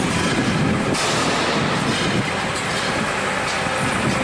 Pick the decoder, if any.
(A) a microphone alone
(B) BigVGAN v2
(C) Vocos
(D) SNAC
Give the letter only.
A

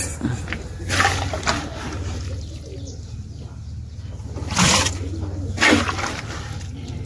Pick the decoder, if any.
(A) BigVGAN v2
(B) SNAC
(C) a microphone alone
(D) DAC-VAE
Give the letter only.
C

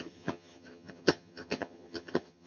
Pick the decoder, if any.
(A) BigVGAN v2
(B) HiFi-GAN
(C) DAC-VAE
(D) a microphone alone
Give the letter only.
B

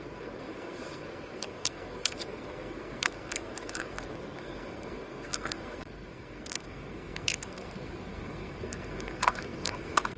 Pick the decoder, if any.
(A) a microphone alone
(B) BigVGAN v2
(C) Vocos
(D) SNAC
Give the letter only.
D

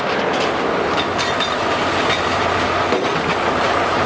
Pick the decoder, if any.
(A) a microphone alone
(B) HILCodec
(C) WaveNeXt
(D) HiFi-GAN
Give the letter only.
A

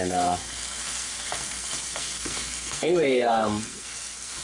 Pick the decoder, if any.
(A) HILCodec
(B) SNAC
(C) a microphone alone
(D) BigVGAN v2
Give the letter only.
B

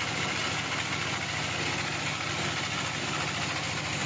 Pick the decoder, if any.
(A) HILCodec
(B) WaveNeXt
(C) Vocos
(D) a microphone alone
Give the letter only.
D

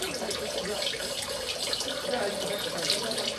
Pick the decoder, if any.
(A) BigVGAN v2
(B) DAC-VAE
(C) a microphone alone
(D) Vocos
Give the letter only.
C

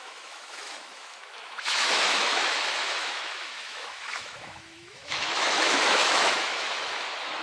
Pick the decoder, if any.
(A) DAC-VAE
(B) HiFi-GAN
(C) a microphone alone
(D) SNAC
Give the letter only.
A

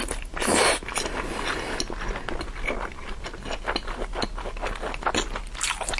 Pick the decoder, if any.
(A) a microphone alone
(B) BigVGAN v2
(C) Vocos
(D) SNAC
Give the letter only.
A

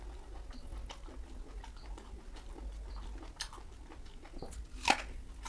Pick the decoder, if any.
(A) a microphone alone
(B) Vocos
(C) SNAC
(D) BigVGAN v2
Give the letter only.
A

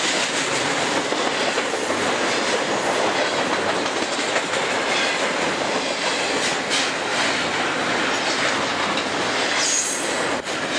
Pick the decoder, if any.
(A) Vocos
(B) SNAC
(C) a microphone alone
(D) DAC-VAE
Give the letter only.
C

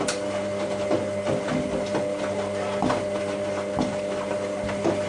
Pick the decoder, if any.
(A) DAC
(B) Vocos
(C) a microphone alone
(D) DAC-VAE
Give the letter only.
C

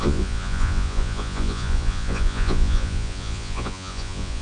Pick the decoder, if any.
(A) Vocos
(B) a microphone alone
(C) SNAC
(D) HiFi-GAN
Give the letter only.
A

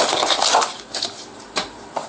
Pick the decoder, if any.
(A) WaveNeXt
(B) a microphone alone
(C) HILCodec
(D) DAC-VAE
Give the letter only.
B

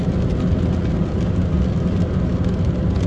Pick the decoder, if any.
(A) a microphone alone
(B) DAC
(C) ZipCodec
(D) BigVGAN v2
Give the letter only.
A